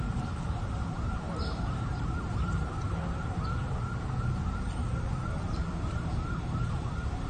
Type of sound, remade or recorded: remade